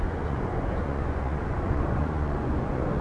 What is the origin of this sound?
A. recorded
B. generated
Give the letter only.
B